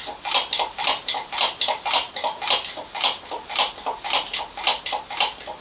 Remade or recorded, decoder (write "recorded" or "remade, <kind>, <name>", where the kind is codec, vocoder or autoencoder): recorded